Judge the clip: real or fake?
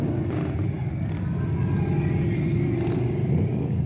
real